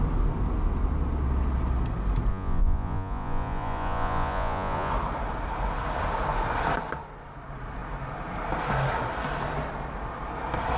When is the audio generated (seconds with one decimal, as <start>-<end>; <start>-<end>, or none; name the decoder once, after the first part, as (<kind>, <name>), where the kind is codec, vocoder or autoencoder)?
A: 2.3-4.9 (vocoder, Vocos)